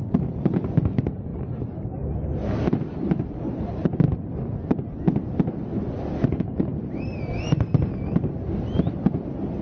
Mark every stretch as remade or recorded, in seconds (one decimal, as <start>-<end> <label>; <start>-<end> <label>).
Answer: 0.0-9.6 recorded